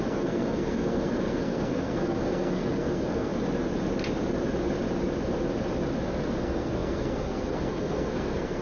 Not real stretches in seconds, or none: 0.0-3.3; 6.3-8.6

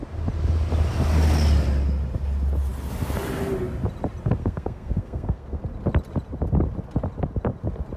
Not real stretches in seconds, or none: 4.4-5.6

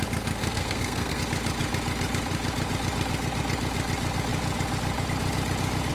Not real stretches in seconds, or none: 0.4-1.2

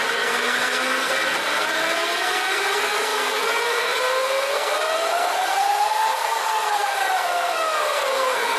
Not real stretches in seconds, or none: 0.0-8.6

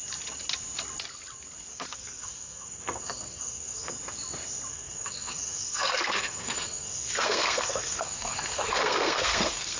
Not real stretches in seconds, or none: 1.7-3.9; 4.7-9.8

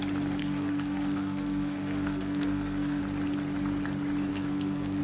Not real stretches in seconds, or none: 0.4-3.0; 4.3-5.0

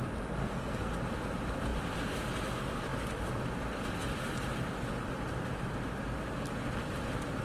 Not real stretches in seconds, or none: 0.4-0.9